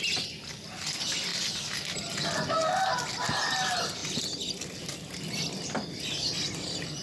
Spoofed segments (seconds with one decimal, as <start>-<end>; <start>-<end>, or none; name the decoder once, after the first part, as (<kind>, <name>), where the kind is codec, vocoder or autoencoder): none